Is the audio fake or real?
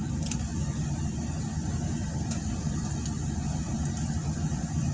real